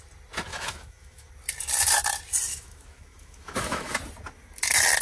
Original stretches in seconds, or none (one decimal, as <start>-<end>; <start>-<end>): 0.0-0.5; 1.3-2.5; 4.0-5.0

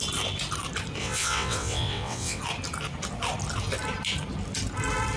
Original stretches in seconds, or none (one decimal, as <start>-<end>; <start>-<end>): 0.0-1.0; 2.4-5.2